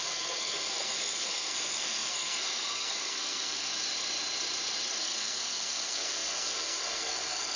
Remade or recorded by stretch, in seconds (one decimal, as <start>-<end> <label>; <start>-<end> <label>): 0.0-3.7 remade; 3.7-5.0 recorded; 5.0-7.6 remade